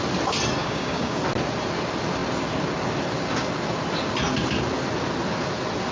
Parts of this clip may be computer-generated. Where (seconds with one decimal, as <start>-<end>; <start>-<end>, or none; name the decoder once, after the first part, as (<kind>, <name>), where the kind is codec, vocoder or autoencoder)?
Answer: 0.6-1.2 (codec, DAC)